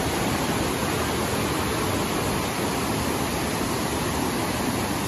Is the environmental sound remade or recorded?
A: recorded